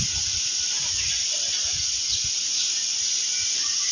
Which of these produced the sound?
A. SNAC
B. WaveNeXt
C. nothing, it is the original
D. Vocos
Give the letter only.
C